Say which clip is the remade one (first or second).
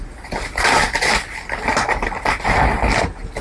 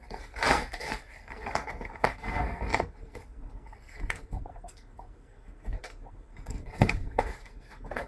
second